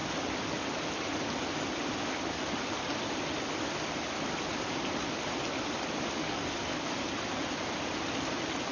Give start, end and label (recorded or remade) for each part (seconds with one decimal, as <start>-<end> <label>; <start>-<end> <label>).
0.0-6.2 recorded; 6.2-7.1 remade; 7.1-8.7 recorded